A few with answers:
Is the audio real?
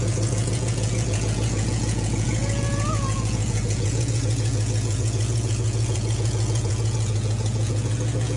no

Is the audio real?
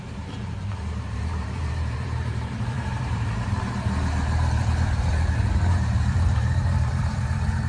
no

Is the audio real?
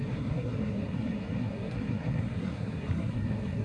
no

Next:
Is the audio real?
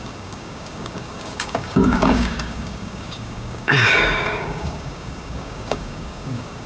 no